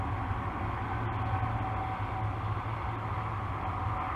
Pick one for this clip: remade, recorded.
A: recorded